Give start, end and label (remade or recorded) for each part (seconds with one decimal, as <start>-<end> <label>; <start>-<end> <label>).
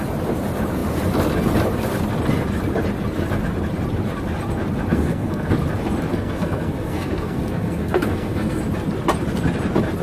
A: 0.0-4.9 recorded; 4.9-5.5 remade; 5.5-6.1 recorded; 6.1-8.6 remade; 8.6-10.0 recorded